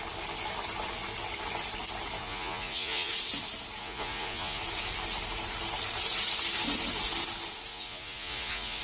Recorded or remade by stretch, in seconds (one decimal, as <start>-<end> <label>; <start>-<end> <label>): 0.0-2.2 recorded; 2.2-3.1 remade; 3.1-3.8 recorded; 3.8-4.6 remade; 4.6-7.7 recorded; 7.7-8.8 remade